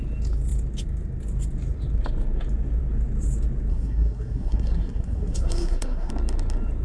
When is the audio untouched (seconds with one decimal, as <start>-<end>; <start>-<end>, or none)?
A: 0.0-3.7; 6.1-6.8